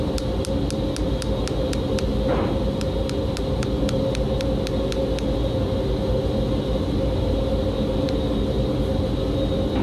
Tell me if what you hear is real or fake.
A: real